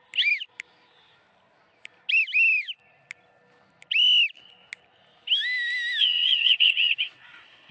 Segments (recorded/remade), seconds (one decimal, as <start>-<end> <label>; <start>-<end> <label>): 0.0-6.0 recorded; 6.0-7.7 remade